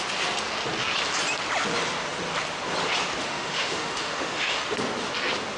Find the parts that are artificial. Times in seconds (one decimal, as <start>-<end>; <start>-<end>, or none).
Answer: 3.2-4.6